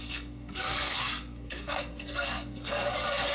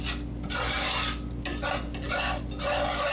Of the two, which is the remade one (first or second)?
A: first